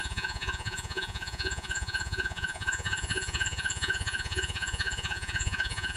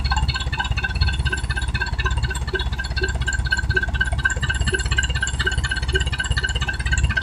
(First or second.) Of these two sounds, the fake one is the first